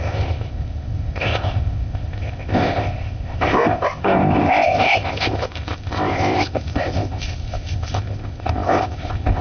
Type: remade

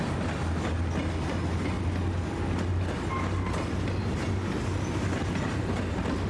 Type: recorded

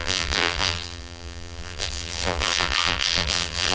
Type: remade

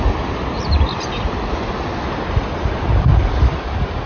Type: recorded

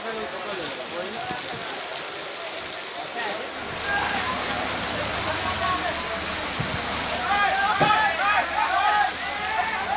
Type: recorded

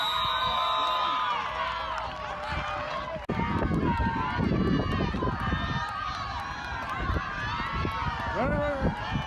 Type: recorded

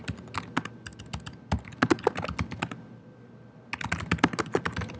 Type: recorded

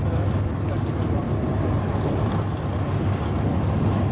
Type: recorded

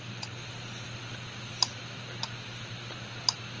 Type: recorded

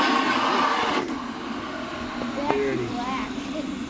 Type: recorded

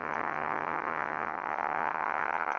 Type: remade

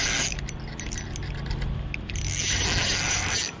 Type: recorded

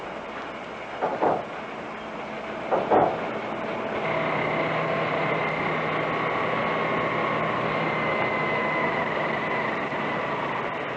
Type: recorded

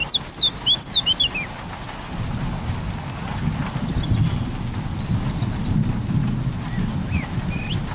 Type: recorded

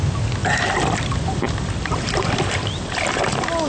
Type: remade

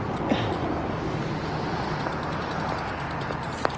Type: recorded